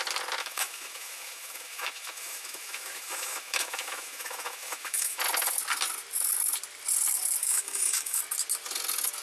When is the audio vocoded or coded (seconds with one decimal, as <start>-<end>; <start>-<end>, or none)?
0.4-5.2; 7.4-8.2

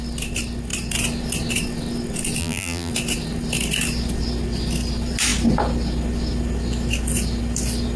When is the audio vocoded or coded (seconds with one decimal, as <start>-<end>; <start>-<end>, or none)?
2.4-2.9

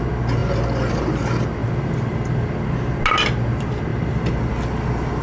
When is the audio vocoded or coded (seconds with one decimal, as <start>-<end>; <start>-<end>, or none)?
1.6-2.5; 3.9-4.5

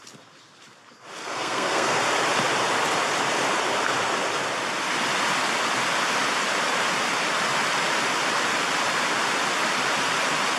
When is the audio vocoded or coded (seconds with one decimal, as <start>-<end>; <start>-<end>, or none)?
1.2-2.0

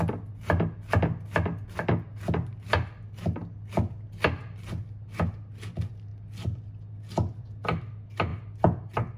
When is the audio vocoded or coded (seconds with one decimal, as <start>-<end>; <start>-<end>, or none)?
none

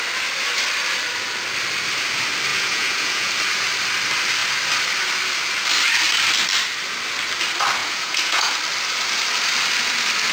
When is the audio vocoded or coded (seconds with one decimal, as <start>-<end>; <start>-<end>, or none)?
2.5-3.3; 7.8-8.5

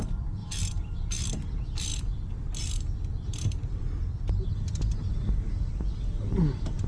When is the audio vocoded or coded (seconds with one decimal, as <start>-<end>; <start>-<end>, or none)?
none

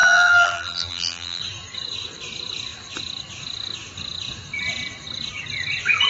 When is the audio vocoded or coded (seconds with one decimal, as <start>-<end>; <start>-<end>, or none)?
0.0-1.4